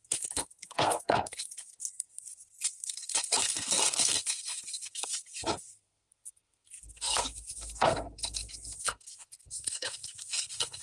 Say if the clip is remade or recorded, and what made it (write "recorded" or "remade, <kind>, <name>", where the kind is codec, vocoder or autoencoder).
remade, codec, SNAC